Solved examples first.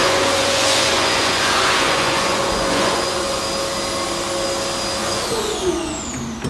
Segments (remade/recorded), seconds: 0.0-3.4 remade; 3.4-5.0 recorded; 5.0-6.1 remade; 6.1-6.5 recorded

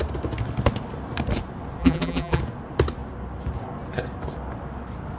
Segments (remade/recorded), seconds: 0.0-1.8 recorded; 1.8-2.4 remade; 2.4-5.2 recorded

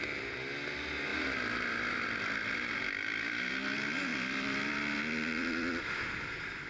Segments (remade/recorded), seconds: 0.0-1.1 recorded; 1.1-3.5 remade; 3.5-4.1 recorded; 4.1-5.9 remade; 5.9-6.7 recorded

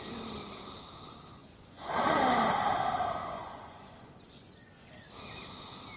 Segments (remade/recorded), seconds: 0.0-1.4 recorded; 1.4-2.2 remade; 2.2-3.2 recorded; 3.2-4.9 remade; 4.9-6.0 recorded

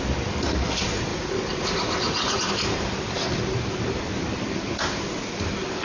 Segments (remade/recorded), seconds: 0.0-1.1 recorded; 1.1-2.5 remade; 2.5-5.8 recorded

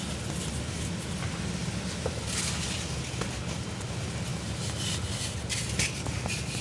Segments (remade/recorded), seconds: 0.0-6.6 recorded

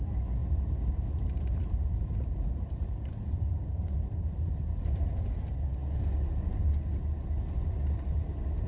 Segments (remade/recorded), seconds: 0.0-0.4 recorded; 0.4-5.6 remade; 5.6-8.7 recorded